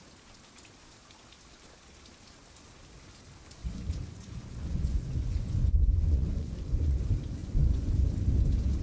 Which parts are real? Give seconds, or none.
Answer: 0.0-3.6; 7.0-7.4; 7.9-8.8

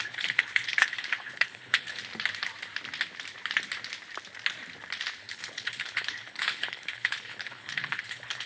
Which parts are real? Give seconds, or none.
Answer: 2.0-5.2

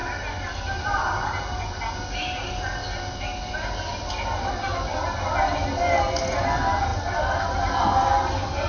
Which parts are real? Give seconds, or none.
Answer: 0.0-8.7